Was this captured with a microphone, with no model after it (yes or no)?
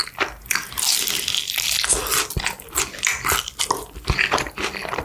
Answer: yes